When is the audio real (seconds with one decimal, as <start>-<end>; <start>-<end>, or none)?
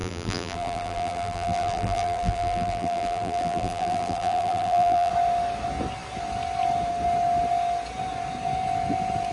5.1-9.3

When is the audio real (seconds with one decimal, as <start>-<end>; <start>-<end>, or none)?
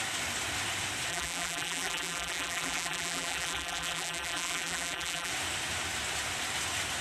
0.0-1.1; 5.3-7.0